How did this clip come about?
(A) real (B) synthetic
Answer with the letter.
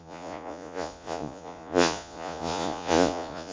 B